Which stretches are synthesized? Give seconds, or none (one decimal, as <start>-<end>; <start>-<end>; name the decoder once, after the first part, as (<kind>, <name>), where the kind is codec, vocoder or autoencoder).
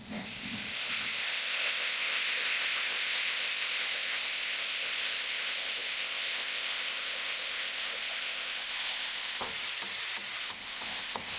0.0-9.5 (codec, ZipCodec); 10.4-11.4